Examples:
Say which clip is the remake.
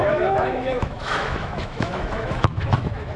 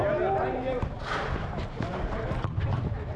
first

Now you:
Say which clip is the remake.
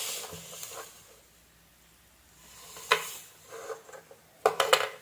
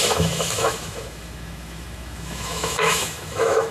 second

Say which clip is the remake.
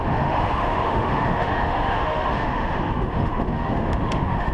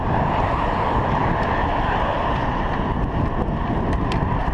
first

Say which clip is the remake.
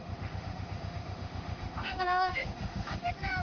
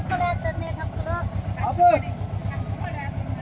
first